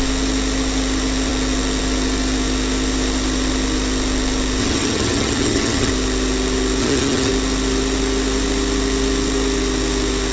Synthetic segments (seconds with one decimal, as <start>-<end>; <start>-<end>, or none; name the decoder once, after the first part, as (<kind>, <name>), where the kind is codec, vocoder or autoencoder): 4.6-5.9 (vocoder, HiFi-GAN); 6.8-7.3